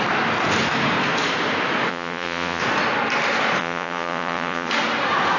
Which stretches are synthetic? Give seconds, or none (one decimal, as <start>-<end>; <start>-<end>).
1.9-2.6; 3.6-4.7